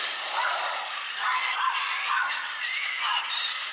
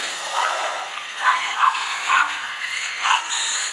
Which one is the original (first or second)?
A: first